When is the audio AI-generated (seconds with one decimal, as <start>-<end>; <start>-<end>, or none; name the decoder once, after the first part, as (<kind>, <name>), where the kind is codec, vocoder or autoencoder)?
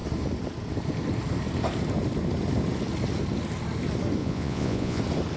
4.2-5.0 (vocoder, Vocos)